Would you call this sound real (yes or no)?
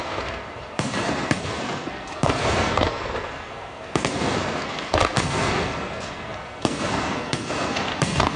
no